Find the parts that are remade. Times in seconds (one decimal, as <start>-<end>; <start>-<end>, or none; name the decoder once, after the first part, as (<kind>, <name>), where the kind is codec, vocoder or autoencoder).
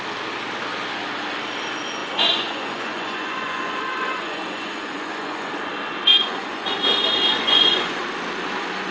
2.0-5.5 (vocoder, Vocos); 6.1-6.8; 7.4-8.0